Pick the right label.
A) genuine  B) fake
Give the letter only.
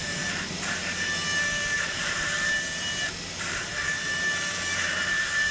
B